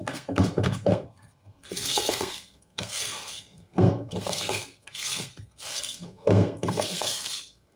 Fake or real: fake